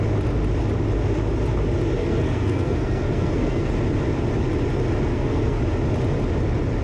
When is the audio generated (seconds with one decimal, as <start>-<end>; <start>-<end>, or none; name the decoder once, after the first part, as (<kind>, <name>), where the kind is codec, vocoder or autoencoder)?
2.0-3.7 (codec, SNAC); 5.1-5.6